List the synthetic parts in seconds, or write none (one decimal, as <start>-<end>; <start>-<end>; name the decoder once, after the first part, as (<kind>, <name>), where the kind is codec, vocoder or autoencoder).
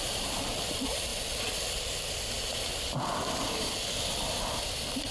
0.0-1.1 (vocoder, BigVGAN v2); 4.0-5.1